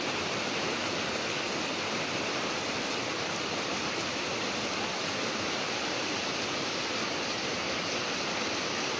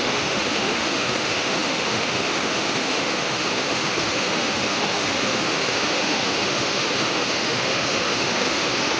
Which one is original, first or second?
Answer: first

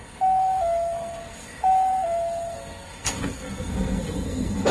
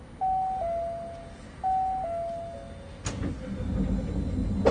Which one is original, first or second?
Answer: second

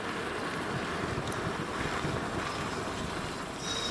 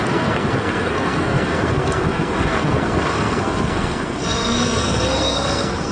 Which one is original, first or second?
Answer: first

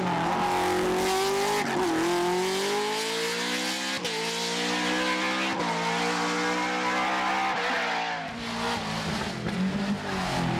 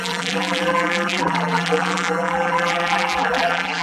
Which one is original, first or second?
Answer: first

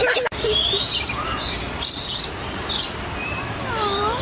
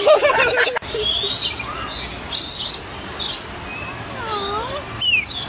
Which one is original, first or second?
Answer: second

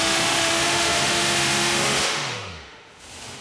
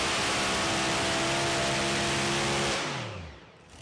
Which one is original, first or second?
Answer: second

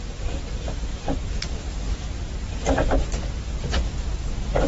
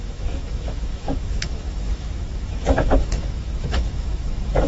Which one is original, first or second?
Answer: first